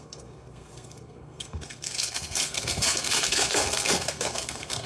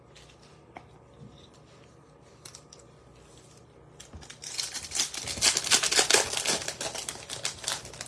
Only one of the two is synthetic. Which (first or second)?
first